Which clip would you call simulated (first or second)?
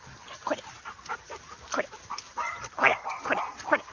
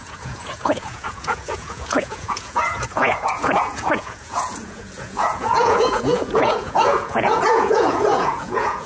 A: second